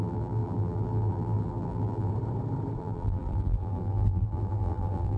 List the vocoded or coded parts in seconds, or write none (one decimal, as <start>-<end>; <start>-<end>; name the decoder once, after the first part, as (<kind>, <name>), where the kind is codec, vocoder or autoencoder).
0.0-2.1 (vocoder, BigVGAN v2); 2.8-5.2